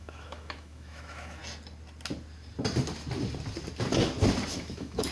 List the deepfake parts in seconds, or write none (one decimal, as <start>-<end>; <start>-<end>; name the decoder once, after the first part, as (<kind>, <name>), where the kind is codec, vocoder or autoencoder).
0.0-1.4 (autoencoder, DAC-VAE); 4.5-5.1